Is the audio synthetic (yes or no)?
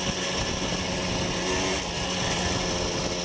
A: no